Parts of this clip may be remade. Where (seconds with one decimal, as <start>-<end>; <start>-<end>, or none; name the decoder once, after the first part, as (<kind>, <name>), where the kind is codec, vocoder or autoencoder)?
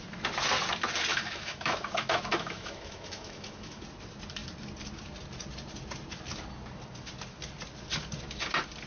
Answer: 1.1-3.8 (autoencoder, DAC-VAE)